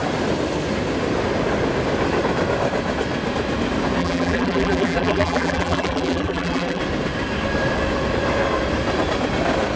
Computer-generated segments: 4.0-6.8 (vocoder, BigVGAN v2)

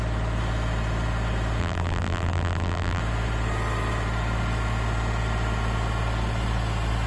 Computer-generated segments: 1.6-3.0 (vocoder, BigVGAN v2)

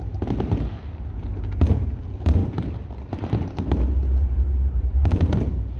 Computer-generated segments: 2.4-3.1 (vocoder, BigVGAN v2); 4.2-5.3